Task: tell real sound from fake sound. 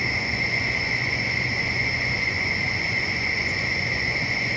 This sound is fake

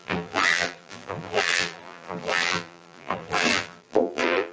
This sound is fake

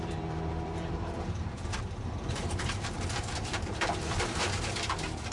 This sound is fake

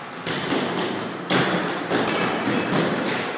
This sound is real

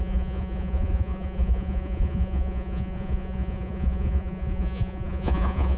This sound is fake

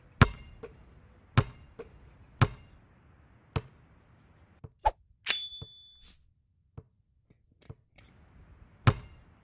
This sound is real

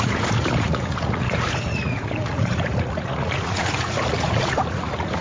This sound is fake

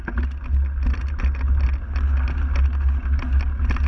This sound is real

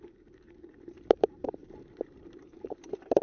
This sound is fake